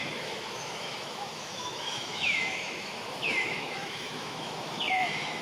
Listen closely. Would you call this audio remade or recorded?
remade